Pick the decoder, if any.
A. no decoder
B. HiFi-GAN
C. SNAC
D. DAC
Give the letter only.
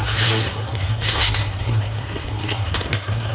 C